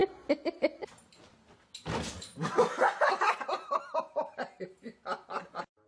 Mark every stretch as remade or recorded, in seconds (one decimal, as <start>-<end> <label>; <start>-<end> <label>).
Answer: 0.0-5.9 recorded